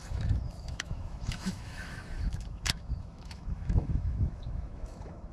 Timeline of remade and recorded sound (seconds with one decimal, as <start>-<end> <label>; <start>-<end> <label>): 0.0-5.3 remade